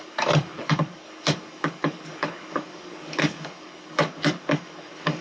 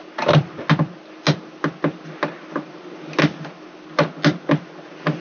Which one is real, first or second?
second